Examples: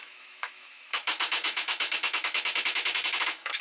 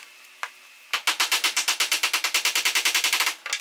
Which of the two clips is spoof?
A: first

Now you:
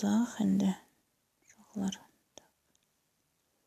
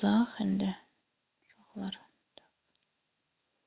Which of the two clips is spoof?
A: second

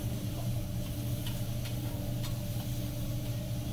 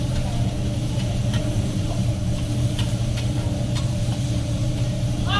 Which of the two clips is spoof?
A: second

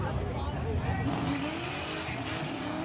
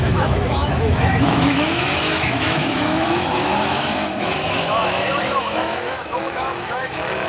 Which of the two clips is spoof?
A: second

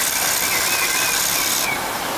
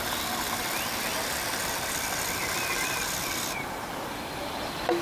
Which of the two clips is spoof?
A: second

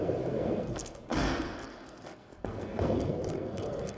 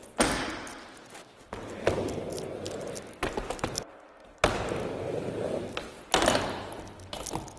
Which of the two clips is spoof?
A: first